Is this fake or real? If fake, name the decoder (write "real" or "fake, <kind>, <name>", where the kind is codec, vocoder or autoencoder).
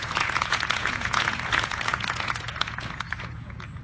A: fake, vocoder, Vocos